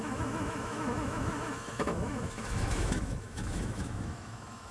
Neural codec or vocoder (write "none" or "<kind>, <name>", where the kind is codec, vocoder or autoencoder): autoencoder, DAC-VAE